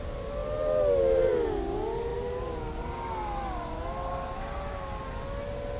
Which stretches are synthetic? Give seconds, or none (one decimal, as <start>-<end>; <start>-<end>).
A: none

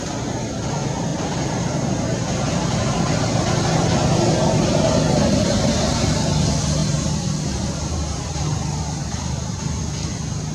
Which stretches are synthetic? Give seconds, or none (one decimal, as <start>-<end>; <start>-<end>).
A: 1.1-3.0; 6.8-8.4; 9.0-9.8

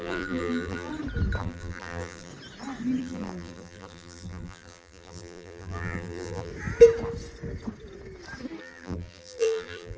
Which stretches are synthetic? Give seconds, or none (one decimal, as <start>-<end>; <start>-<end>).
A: 0.0-0.9; 1.4-2.3; 3.0-6.5; 8.6-10.0

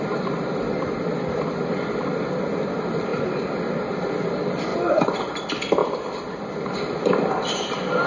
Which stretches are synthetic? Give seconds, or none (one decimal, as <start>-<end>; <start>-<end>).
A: 4.7-5.3

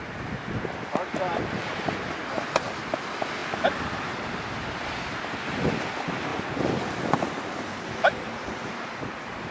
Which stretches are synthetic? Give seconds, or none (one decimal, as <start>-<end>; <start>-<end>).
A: 6.3-8.7

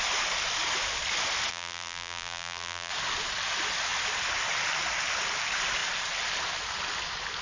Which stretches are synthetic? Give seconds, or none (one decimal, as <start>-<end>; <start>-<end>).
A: 1.5-2.9

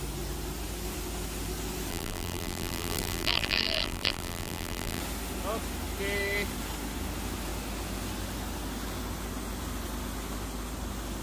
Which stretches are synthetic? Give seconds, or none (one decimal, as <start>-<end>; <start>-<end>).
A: 1.9-5.0